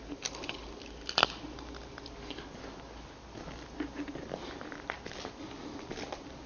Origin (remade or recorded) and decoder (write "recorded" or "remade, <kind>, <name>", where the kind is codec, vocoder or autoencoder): recorded